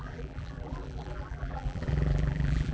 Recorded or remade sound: remade